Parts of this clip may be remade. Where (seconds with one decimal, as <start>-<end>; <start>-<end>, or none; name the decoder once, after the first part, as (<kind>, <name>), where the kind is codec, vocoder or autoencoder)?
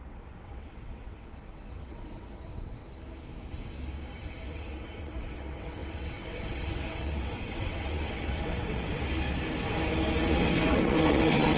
0.0-2.8 (vocoder, WaveNeXt); 4.2-9.0; 10.2-11.6